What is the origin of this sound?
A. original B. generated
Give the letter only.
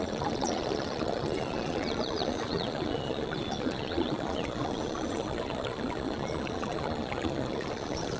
B